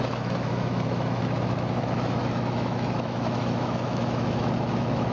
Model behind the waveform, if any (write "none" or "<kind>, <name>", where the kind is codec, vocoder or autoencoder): autoencoder, DAC-VAE